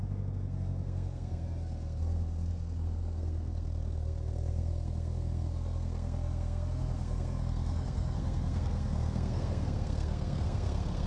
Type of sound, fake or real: fake